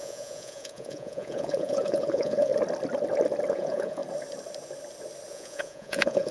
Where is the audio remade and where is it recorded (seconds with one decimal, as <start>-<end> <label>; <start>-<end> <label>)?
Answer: 0.0-2.5 remade; 2.5-3.5 recorded; 3.5-4.0 remade; 4.0-5.3 recorded; 5.3-6.3 remade